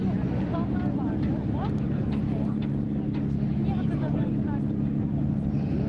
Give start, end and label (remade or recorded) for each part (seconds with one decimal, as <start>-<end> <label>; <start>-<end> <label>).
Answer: 0.0-5.9 recorded